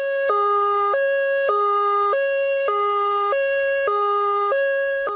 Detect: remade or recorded remade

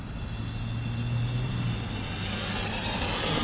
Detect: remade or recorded recorded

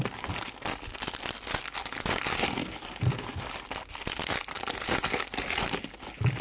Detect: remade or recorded recorded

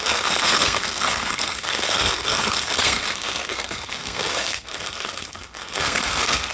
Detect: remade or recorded remade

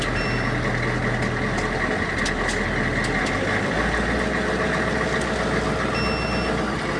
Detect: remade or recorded recorded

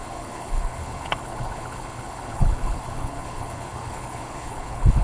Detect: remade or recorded remade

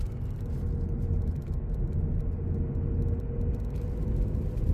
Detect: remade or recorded recorded